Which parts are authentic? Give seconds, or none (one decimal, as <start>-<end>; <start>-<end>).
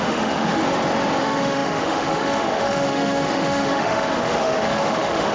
0.6-1.2